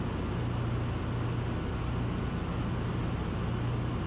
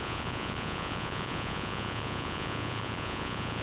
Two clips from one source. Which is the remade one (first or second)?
second